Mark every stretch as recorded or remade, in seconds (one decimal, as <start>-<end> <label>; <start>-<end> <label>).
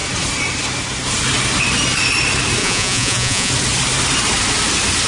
0.0-2.6 recorded; 2.6-3.5 remade; 3.5-5.1 recorded